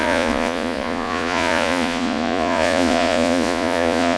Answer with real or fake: fake